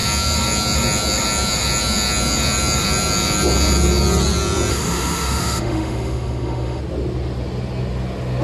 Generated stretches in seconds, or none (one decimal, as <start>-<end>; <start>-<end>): 4.7-6.8